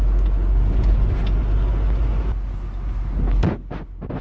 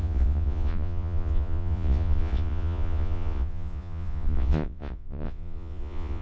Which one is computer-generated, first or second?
second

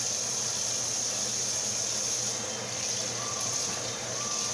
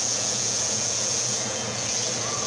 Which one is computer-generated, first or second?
second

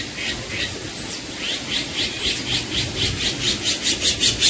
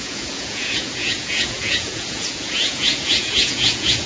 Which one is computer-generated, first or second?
second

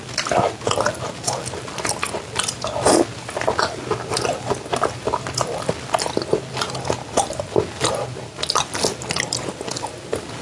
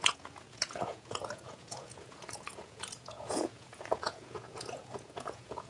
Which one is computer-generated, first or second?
second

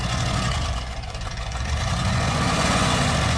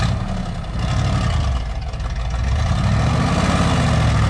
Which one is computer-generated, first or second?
first